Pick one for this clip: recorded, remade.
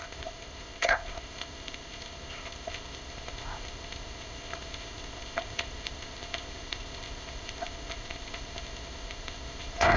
remade